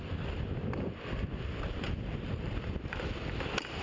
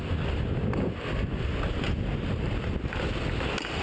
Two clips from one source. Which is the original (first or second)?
second